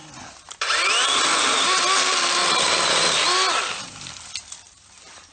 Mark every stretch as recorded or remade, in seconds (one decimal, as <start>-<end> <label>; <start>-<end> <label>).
0.0-5.3 recorded